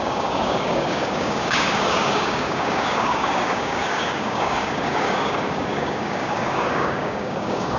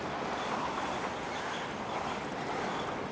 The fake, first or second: first